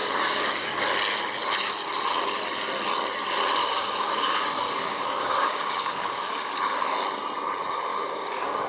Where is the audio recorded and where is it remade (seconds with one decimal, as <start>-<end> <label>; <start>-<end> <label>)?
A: 0.0-0.8 remade; 0.8-3.6 recorded; 3.6-7.0 remade; 7.0-7.9 recorded; 7.9-8.7 remade